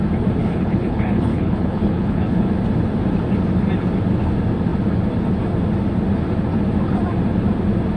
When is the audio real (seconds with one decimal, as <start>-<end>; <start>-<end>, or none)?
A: 0.0-0.4; 2.5-8.0